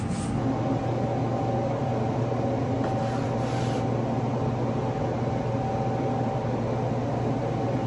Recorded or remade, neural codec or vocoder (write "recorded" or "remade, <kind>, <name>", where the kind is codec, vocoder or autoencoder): recorded